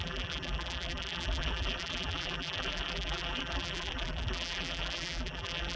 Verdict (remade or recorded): remade